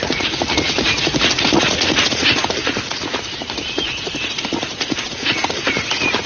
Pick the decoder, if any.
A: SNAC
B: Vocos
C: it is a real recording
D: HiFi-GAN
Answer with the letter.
B